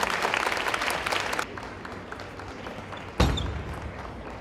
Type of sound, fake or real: real